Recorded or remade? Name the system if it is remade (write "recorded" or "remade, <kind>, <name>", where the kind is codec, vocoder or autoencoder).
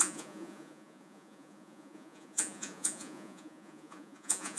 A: remade, vocoder, Vocos